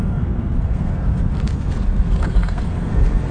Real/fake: fake